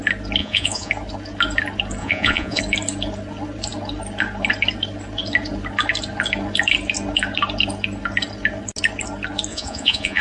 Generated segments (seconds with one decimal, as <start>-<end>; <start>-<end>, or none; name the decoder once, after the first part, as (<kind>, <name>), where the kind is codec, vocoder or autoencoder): 0.4-0.9 (vocoder, Vocos); 2.0-2.6; 9.5-10.2